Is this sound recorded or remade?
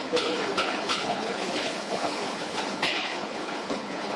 remade